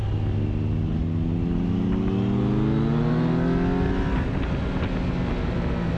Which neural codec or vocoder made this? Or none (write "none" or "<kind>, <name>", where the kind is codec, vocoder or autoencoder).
none